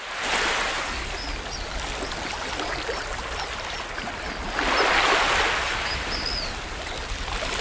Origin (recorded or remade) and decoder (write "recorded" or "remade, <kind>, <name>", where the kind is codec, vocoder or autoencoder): recorded